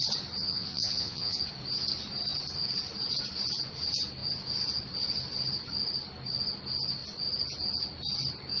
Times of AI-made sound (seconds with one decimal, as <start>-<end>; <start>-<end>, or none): 0.4-1.4